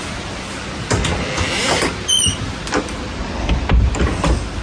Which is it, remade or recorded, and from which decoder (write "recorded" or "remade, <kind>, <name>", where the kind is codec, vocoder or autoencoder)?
recorded